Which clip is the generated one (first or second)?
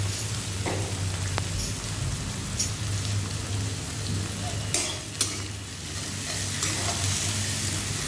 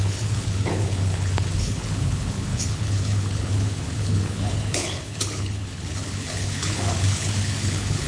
second